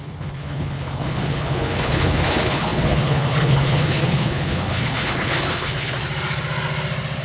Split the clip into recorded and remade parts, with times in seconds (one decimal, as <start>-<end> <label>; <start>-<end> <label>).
0.0-6.0 remade; 6.0-7.2 recorded